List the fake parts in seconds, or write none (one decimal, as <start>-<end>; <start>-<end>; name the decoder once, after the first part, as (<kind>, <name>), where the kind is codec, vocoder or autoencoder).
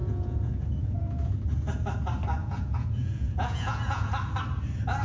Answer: 0.0-1.3 (vocoder, Vocos); 2.4-4.1